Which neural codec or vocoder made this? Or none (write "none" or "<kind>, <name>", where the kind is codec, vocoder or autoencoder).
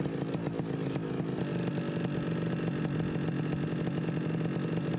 none